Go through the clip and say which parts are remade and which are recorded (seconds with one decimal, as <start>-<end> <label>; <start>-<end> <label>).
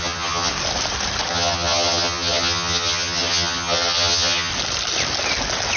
0.0-0.5 remade; 0.5-1.3 recorded; 1.3-4.5 remade; 4.5-5.8 recorded